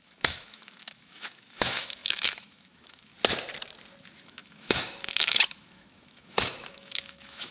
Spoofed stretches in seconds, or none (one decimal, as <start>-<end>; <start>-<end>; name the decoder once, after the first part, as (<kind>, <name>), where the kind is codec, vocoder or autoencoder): 0.0-3.1 (autoencoder, DAC-VAE); 4.0-7.5